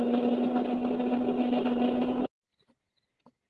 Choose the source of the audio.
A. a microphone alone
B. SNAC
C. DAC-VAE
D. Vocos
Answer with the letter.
A